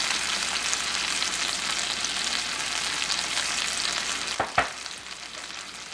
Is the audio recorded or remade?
recorded